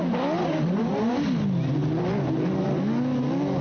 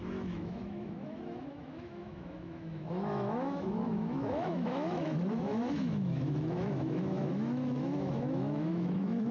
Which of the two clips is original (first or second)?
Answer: first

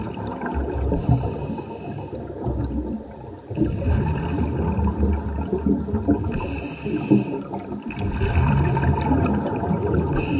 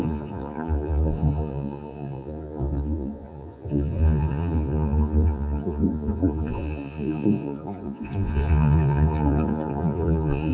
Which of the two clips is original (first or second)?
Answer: first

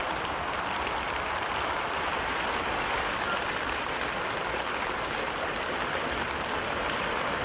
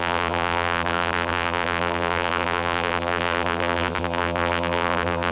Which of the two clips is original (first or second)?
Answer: first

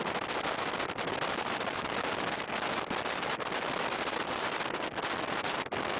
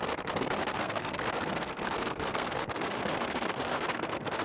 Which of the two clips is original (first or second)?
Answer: first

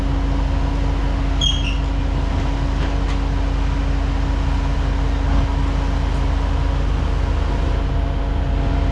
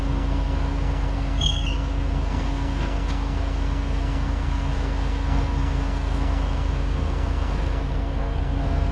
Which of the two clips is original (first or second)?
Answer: first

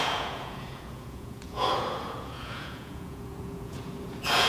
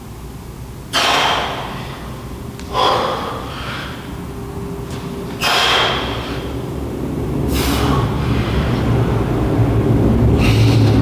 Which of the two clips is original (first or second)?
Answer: second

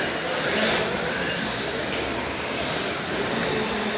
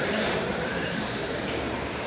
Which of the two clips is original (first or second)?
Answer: first